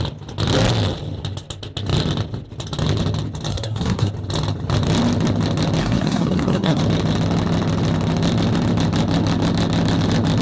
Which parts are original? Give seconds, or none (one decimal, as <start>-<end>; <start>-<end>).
0.0-3.5; 4.1-5.8; 6.8-10.4